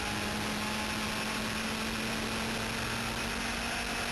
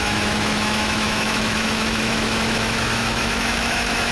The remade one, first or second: second